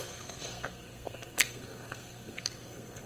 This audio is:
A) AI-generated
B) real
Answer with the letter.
A